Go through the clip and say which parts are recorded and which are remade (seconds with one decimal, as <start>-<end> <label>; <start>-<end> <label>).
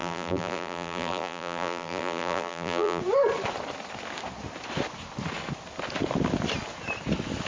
0.0-3.0 remade; 3.0-7.5 recorded